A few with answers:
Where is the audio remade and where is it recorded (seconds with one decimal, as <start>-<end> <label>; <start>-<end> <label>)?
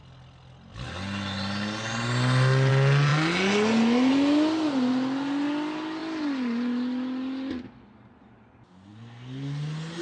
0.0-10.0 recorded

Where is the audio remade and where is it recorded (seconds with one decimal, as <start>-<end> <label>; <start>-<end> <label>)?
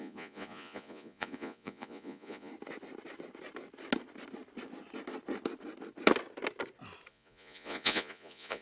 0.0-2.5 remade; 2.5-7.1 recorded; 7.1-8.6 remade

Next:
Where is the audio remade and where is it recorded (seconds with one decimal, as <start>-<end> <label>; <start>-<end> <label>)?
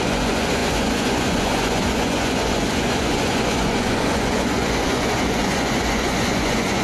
0.0-6.8 remade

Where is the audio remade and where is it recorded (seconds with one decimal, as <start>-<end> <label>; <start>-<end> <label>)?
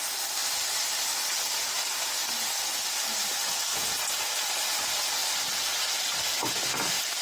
0.0-7.2 remade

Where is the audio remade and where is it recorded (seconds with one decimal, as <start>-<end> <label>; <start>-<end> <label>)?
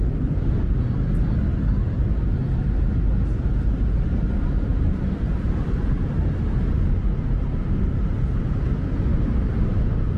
0.0-4.7 recorded; 4.7-6.4 remade; 6.4-10.2 recorded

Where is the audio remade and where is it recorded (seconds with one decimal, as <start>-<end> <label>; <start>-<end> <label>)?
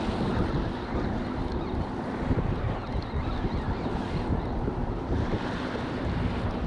0.0-4.8 recorded; 4.8-6.1 remade; 6.1-6.7 recorded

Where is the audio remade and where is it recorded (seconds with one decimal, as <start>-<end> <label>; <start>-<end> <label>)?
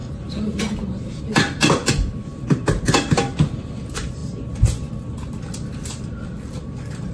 0.0-1.2 recorded; 1.2-4.2 remade; 4.2-6.0 recorded; 6.0-7.1 remade